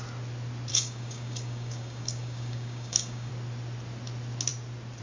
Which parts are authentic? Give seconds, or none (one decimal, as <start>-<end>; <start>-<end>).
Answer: 0.0-0.7; 3.3-5.0